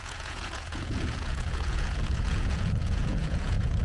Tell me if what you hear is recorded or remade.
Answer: remade